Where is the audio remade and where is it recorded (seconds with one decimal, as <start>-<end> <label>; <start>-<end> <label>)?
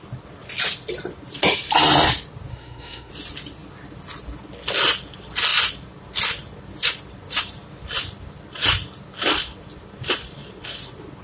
0.0-2.5 recorded; 2.5-3.1 remade; 3.1-11.2 recorded